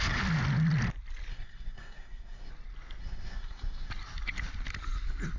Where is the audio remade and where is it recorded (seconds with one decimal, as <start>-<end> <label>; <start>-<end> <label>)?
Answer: 0.0-1.3 recorded; 1.3-2.5 remade; 2.5-3.0 recorded; 3.0-3.9 remade; 3.9-5.4 recorded